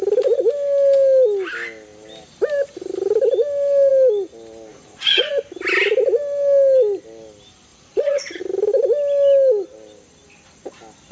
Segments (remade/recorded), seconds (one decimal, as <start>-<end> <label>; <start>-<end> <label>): 0.0-4.7 recorded; 4.7-5.3 remade; 5.3-7.7 recorded; 7.7-8.4 remade; 8.4-11.1 recorded